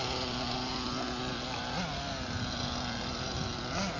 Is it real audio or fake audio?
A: real